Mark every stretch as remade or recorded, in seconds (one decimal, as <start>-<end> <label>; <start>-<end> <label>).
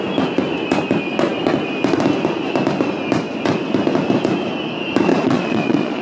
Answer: 0.0-5.1 recorded; 5.1-6.0 remade